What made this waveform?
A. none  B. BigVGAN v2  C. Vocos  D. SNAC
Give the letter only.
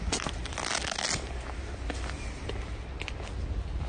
A